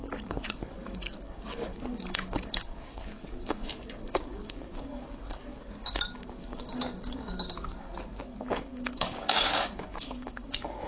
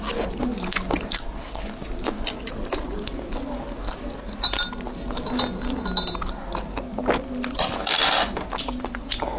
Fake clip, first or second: first